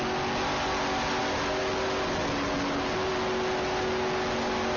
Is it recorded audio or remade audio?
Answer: recorded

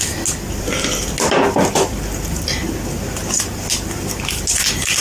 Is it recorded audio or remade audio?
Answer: recorded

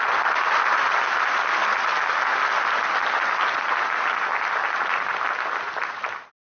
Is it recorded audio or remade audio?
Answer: recorded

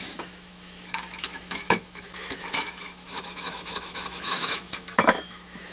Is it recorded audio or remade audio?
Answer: remade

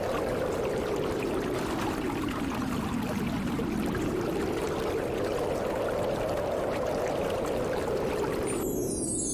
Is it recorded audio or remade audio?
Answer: recorded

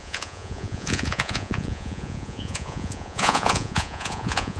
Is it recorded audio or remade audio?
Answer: remade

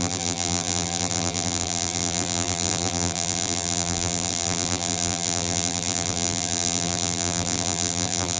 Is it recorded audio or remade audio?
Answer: remade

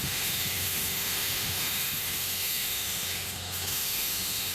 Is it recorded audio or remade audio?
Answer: remade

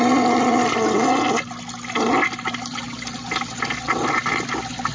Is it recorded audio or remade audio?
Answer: recorded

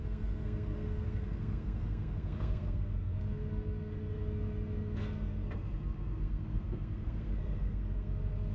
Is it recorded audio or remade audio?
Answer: remade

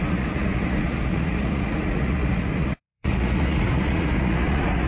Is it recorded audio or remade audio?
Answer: remade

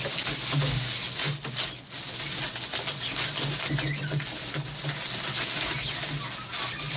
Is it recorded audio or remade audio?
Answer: recorded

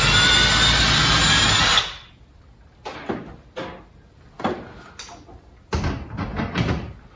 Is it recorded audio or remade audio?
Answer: recorded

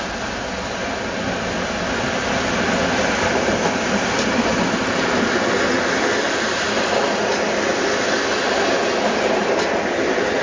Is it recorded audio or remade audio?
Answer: recorded